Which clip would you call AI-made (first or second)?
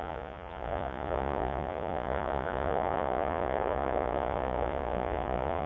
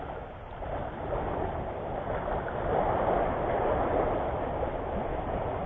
first